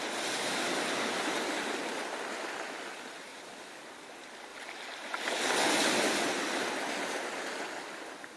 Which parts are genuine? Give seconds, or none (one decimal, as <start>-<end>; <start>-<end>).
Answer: 0.0-3.3; 3.8-8.4